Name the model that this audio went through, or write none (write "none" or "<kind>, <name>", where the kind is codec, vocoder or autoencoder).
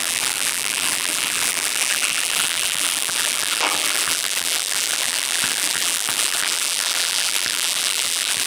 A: vocoder, BigVGAN v2